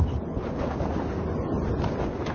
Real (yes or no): yes